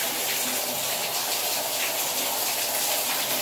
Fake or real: real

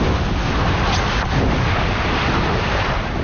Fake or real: real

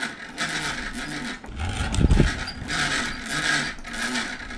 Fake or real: real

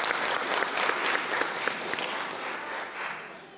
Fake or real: real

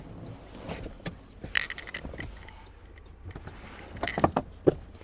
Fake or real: real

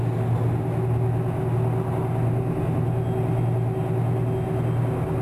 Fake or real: real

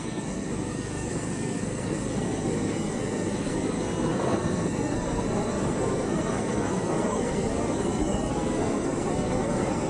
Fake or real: fake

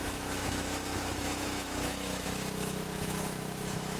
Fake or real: fake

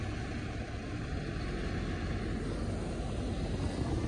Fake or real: real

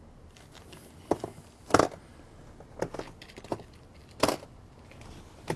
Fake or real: real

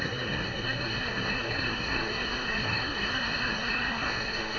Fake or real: fake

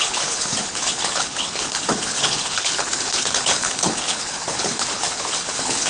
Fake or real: fake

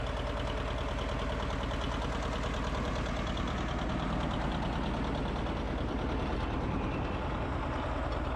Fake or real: real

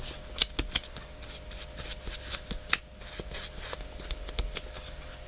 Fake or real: real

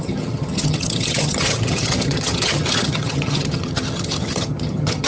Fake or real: fake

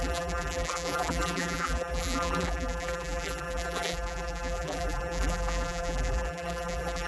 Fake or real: fake